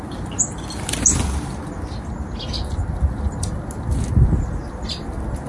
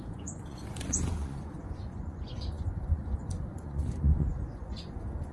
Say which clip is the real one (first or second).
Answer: first